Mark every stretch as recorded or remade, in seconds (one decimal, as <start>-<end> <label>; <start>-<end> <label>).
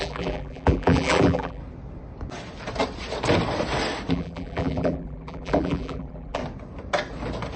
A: 0.0-1.6 remade; 1.6-4.1 recorded; 4.1-6.4 remade; 6.4-7.6 recorded